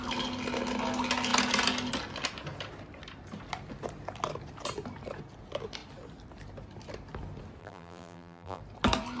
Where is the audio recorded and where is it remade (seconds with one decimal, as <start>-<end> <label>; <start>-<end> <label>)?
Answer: 0.0-7.6 recorded; 7.6-8.6 remade; 8.6-9.2 recorded